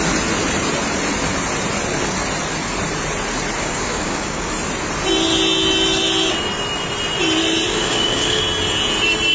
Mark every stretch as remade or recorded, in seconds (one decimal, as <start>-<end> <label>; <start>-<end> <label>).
0.0-3.6 recorded; 3.6-4.5 remade; 4.5-7.7 recorded; 7.7-8.4 remade; 8.4-9.3 recorded